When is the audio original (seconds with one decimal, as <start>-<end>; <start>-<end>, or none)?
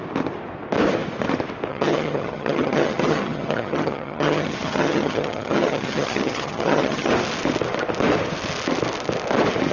0.0-1.7; 7.1-9.7